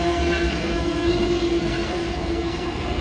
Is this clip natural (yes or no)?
no